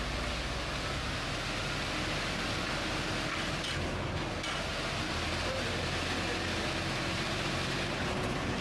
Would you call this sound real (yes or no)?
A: yes